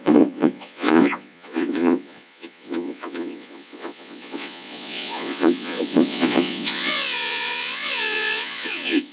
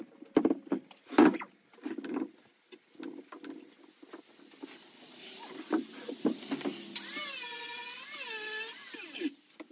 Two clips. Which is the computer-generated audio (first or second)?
first